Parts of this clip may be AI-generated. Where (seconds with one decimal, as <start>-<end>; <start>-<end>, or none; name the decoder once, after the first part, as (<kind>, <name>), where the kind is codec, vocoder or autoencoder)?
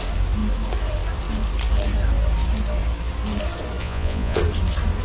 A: 3.8-4.4 (vocoder, Vocos)